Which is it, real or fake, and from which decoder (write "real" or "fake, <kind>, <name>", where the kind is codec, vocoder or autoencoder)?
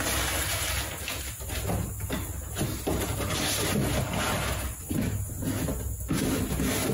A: real